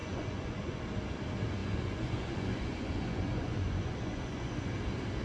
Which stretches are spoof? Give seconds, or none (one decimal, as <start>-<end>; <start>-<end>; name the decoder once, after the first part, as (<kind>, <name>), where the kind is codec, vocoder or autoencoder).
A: 0.0-0.8 (vocoder, Vocos); 1.6-4.7